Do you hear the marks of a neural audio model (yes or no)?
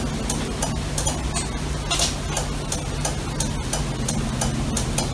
no